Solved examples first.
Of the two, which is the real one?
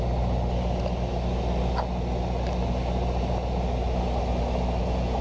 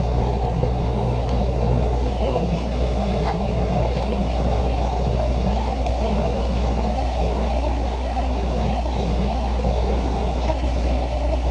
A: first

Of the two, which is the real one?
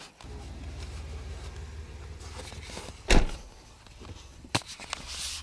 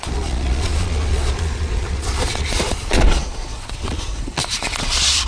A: first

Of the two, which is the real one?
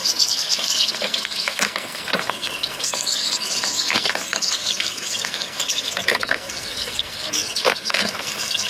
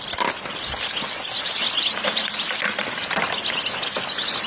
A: second